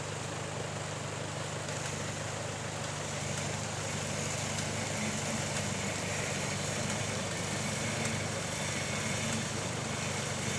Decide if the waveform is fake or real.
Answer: real